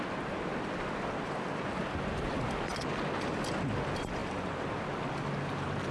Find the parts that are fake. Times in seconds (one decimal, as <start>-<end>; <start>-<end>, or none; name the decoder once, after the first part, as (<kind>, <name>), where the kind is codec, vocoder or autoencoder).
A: none